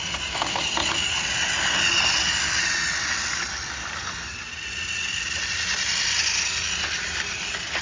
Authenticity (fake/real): real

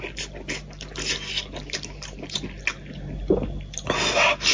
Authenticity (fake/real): real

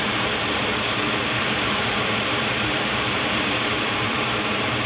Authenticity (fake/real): fake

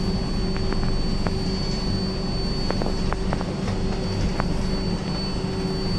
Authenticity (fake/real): real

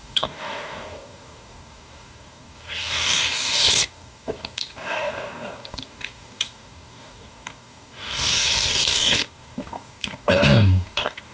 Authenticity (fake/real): fake